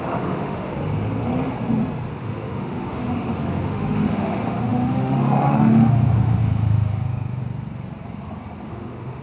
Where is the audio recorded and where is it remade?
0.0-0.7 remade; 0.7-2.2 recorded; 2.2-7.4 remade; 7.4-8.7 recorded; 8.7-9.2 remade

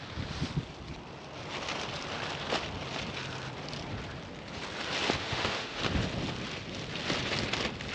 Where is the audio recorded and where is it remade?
0.0-5.2 recorded; 5.2-5.8 remade; 5.8-7.9 recorded

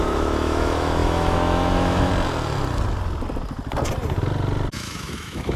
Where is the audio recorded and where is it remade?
0.0-2.1 remade; 2.1-4.7 recorded; 4.7-5.6 remade

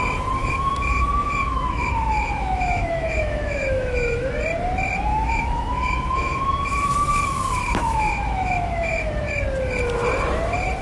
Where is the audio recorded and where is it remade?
0.0-0.4 recorded; 0.4-4.3 remade; 4.3-5.1 recorded; 5.1-9.1 remade; 9.1-10.8 recorded

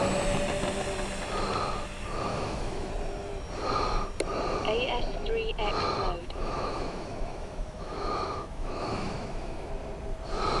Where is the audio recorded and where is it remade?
0.0-2.3 recorded; 2.3-2.9 remade; 2.9-6.2 recorded; 6.2-9.7 remade; 9.7-10.6 recorded

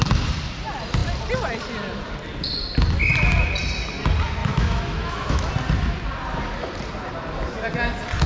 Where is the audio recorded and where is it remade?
0.0-4.4 recorded; 4.4-5.5 remade; 5.5-8.3 recorded

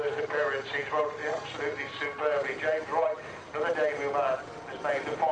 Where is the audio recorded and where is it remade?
0.0-5.3 recorded